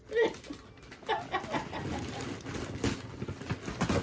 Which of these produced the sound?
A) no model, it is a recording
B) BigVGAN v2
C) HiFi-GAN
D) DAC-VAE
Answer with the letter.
A